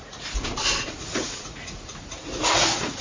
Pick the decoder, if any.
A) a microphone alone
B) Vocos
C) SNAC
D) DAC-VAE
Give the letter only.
B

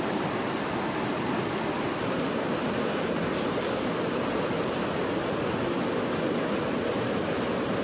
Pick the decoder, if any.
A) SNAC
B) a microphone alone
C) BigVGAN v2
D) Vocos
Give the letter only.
B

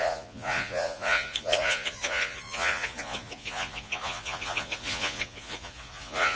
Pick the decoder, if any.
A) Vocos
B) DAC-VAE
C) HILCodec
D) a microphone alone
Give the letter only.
A